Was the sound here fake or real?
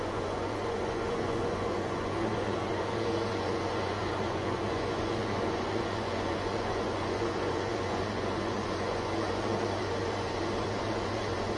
fake